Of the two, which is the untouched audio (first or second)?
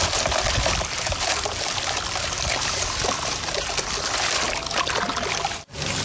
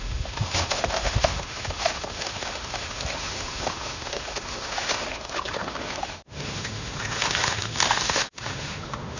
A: first